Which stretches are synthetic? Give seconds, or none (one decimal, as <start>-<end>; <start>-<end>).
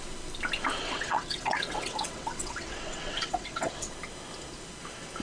0.8-3.9